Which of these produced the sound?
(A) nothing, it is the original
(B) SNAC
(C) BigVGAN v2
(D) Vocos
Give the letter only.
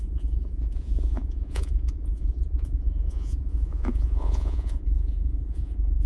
D